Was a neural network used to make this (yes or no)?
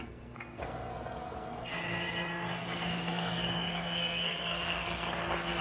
yes